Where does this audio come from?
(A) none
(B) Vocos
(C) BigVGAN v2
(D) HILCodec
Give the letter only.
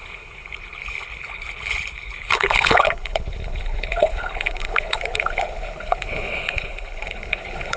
D